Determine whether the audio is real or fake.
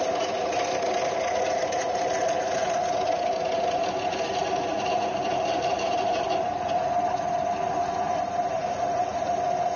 real